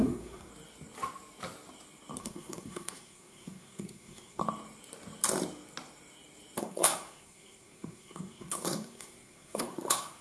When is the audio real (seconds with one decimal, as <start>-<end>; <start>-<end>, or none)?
0.5-2.2; 4.4-6.6